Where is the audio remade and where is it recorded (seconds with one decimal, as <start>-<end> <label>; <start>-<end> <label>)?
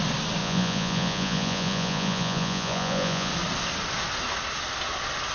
0.0-0.4 recorded; 0.4-3.3 remade; 3.3-5.3 recorded